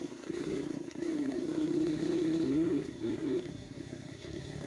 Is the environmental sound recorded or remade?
remade